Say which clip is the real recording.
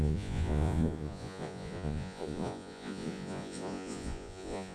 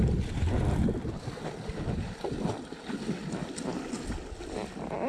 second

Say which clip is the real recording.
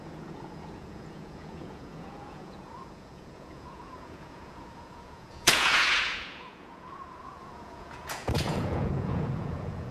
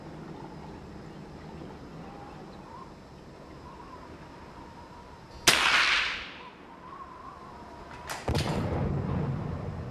second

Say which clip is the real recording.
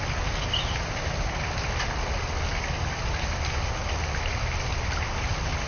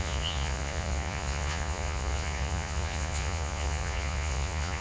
first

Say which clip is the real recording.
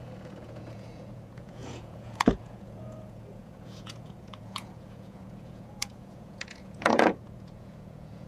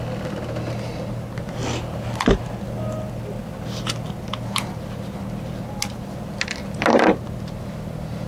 second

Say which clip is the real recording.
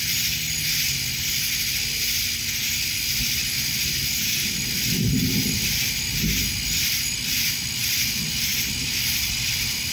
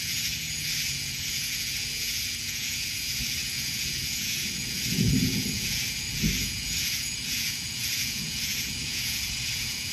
first